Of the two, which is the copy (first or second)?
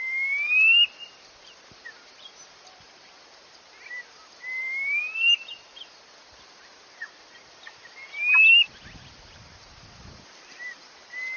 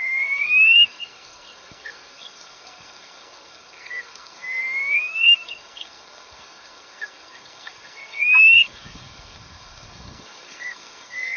second